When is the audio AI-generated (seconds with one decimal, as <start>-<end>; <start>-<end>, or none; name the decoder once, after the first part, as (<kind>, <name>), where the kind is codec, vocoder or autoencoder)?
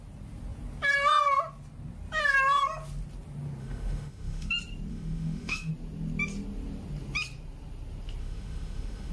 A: 3.6-4.5 (autoencoder, DAC-VAE); 4.9-5.7; 8.2-9.1